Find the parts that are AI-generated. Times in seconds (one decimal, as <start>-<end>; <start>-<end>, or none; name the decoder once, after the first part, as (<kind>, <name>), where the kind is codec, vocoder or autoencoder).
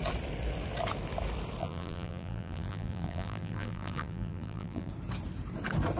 1.6-4.9 (vocoder, BigVGAN v2)